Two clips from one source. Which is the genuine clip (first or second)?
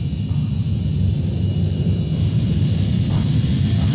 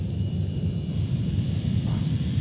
first